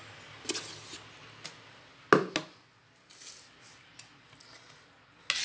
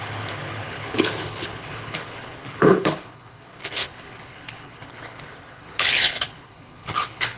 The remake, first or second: second